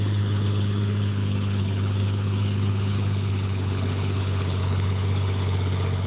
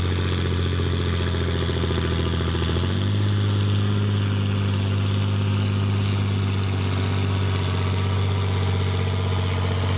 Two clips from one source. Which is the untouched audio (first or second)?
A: second